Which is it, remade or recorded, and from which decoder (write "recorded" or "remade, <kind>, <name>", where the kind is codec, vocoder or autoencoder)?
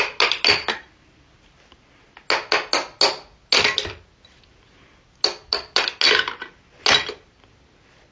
recorded